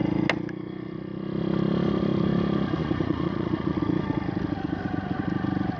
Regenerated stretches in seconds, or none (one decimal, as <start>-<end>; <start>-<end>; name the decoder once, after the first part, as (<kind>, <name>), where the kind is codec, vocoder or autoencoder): 2.8-3.8 (vocoder, Vocos)